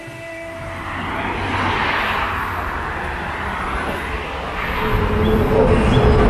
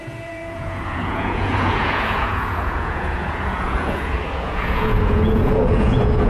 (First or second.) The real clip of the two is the first